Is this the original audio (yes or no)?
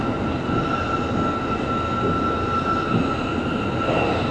yes